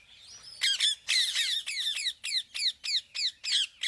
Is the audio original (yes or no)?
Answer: yes